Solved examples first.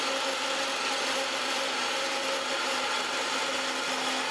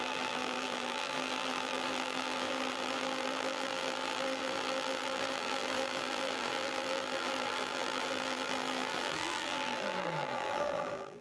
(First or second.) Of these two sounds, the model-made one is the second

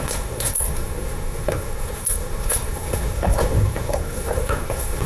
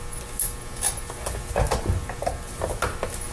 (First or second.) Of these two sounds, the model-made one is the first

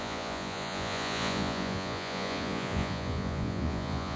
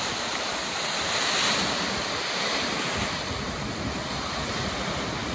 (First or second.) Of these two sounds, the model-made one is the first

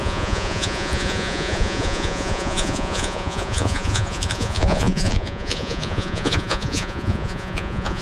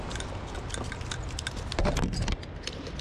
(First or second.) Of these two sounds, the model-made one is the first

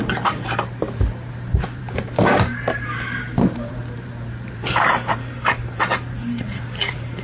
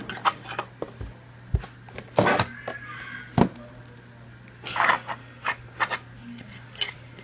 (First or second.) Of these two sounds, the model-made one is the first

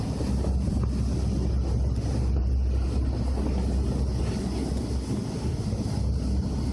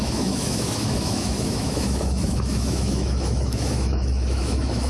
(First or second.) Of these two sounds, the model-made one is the second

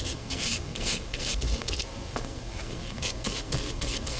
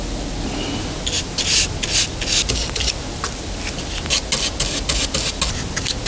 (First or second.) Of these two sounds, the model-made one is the first